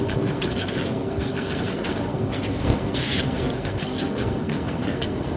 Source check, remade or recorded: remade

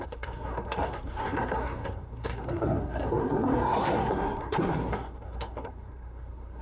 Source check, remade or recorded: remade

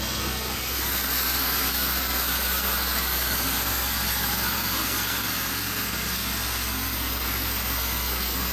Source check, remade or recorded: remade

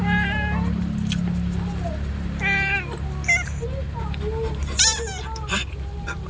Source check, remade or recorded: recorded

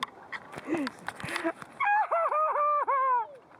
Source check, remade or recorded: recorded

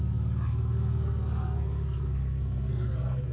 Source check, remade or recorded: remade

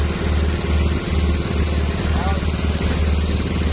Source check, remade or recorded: recorded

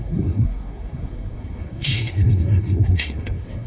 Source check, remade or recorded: remade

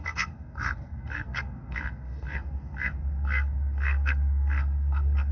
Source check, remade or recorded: remade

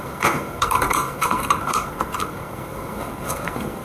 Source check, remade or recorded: remade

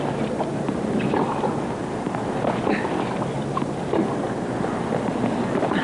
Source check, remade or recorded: recorded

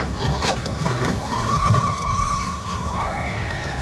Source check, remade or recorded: remade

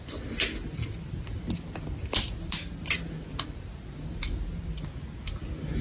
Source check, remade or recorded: recorded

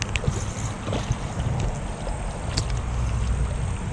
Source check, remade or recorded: recorded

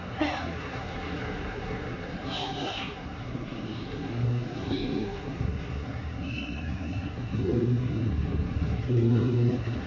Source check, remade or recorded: remade